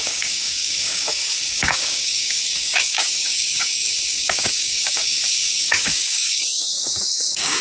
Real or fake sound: fake